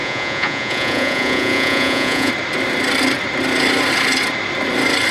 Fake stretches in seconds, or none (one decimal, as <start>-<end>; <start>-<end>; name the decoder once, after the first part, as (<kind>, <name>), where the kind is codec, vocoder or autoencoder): 0.0-2.3 (vocoder, Vocos)